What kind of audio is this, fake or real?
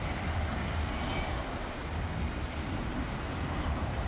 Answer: fake